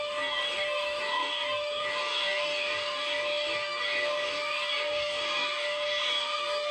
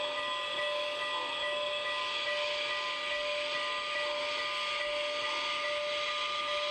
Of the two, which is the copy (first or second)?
first